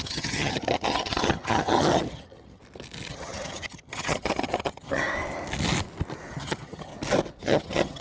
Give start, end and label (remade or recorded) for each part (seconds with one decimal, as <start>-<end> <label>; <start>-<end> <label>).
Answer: 0.0-2.6 remade; 2.6-3.1 recorded; 3.1-5.0 remade; 5.0-6.3 recorded; 6.3-6.9 remade; 6.9-7.4 recorded; 7.4-8.0 remade